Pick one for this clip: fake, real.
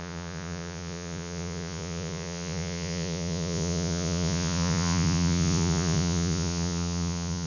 fake